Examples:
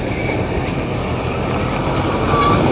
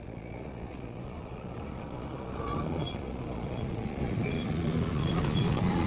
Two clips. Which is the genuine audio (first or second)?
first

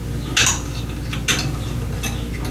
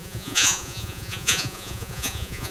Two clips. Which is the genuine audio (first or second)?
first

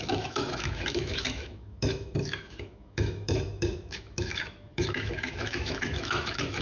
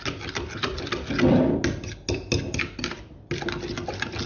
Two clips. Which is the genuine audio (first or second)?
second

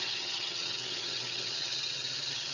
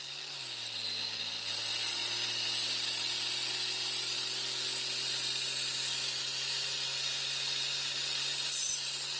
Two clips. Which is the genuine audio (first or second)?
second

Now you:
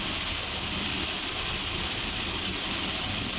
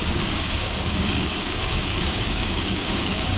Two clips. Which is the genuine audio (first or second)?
first